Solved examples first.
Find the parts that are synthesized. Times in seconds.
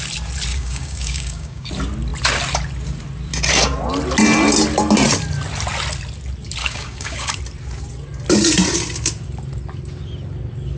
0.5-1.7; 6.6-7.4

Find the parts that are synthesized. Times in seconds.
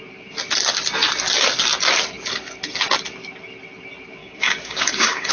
4.2-5.3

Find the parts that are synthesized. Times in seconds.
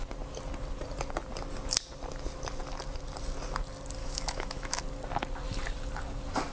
4.0-4.8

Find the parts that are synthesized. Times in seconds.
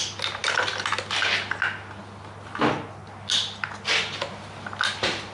none